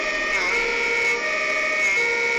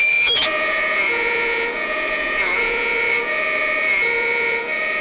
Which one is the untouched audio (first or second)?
first